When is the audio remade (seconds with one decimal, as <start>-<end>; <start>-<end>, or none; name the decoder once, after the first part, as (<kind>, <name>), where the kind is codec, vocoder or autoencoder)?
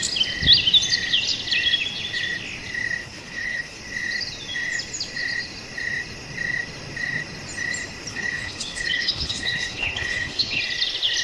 3.0-3.8 (codec, HILCodec); 8.1-10.6